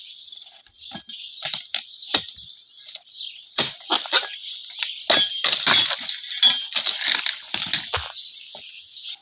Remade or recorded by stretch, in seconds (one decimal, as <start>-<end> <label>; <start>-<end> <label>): 0.0-9.2 recorded